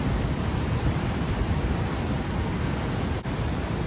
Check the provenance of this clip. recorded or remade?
recorded